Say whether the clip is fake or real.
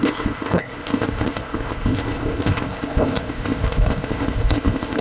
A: fake